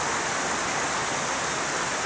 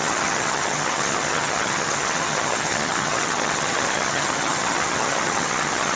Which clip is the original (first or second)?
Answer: first